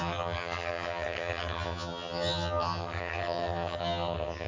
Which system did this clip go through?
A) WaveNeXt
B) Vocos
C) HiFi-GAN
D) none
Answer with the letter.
C